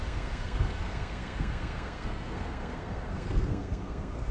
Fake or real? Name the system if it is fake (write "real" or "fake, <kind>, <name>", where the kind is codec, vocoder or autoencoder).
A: fake, codec, SNAC